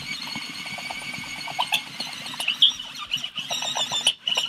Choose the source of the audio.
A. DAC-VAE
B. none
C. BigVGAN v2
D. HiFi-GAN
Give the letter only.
B